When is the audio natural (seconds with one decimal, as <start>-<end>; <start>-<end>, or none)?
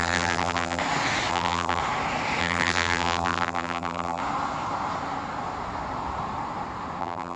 0.8-1.3; 1.8-2.4; 4.2-7.0